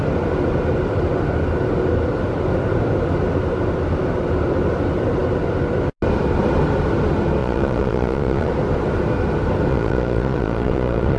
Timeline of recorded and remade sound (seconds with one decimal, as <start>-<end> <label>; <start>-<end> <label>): 0.0-7.4 recorded; 7.4-8.5 remade; 8.5-9.7 recorded; 9.7-11.2 remade